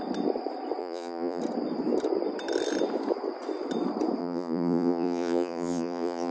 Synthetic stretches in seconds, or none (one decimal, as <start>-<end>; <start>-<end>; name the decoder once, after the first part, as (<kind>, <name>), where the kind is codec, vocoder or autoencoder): 0.8-1.4 (vocoder, Vocos); 4.2-6.3